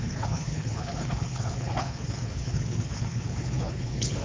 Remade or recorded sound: remade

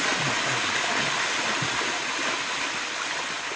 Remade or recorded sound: recorded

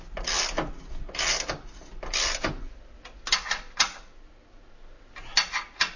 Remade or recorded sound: recorded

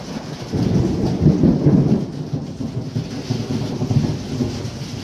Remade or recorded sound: recorded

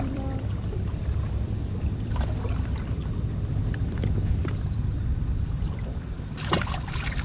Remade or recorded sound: remade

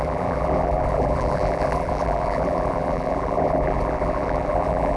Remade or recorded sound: remade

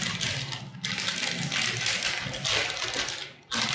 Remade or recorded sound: recorded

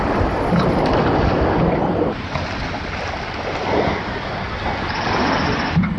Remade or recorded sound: recorded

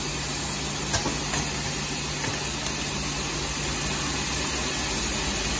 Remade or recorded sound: recorded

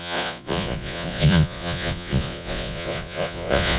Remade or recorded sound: remade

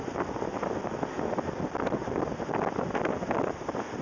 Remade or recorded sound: recorded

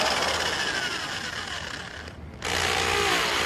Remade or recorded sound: recorded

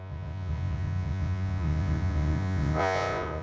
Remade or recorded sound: remade